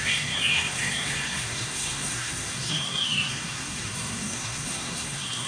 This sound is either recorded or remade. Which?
remade